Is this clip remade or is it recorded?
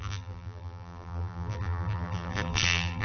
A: remade